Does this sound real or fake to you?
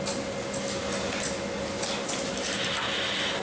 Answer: real